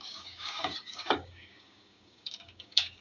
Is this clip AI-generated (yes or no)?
yes